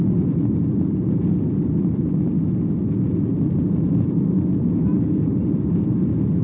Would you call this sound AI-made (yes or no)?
no